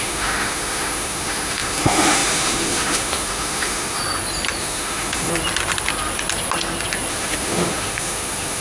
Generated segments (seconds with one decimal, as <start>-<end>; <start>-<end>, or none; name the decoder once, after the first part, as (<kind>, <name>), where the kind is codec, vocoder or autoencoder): 0.0-4.0 (autoencoder, DAC-VAE); 4.6-5.3; 7.1-8.6

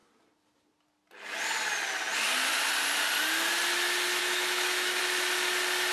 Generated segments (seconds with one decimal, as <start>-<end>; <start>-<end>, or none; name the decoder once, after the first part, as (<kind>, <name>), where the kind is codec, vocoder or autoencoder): 4.2-5.0 (autoencoder, DAC-VAE)

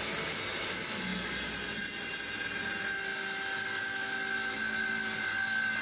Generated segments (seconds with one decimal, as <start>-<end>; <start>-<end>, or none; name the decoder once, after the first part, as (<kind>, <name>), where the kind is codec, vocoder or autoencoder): none

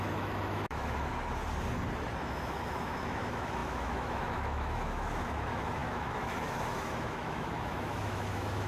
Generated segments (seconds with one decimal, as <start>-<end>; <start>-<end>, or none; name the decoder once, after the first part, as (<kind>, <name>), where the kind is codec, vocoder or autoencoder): 0.0-1.1 (autoencoder, DAC-VAE); 2.2-8.7

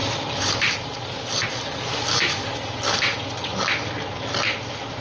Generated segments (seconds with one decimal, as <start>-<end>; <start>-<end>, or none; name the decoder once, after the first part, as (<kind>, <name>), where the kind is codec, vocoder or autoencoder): none

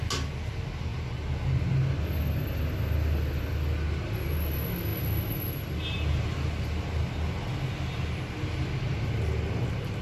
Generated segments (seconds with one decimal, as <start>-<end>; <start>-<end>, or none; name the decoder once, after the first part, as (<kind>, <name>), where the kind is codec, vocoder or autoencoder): none

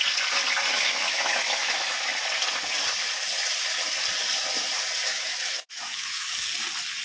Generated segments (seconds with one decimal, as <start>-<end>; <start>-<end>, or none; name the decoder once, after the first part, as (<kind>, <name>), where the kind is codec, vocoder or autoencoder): 0.7-2.1 (autoencoder, DAC-VAE); 5.1-6.5